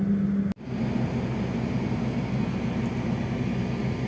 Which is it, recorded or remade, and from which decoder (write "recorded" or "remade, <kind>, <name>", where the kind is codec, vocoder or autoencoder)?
recorded